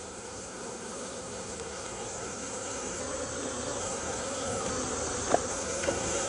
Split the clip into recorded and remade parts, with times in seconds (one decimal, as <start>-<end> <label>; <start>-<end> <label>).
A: 0.0-3.0 remade; 3.0-3.8 recorded; 3.8-4.7 remade; 4.7-5.5 recorded; 5.5-6.3 remade